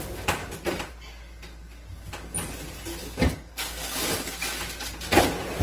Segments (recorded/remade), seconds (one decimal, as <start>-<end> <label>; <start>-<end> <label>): 0.0-3.0 recorded; 3.0-4.3 remade; 4.3-5.6 recorded